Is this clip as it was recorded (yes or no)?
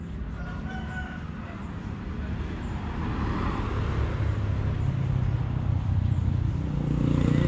yes